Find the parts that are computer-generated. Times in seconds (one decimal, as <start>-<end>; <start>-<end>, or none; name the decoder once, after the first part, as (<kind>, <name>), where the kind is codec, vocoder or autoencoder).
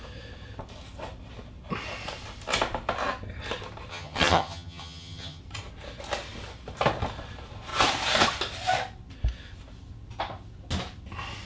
3.9-5.4 (vocoder, HiFi-GAN)